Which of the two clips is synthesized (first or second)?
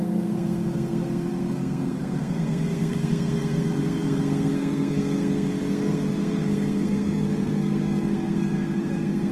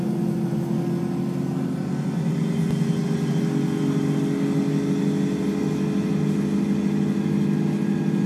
first